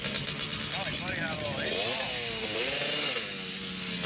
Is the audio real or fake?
real